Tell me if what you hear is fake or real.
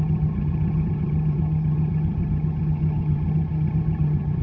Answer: fake